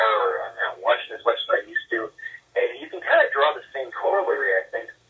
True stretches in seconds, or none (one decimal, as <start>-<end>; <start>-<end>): 2.7-3.9